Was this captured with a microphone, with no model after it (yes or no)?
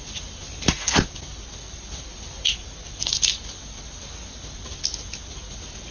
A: yes